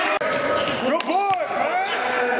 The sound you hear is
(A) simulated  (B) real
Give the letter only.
B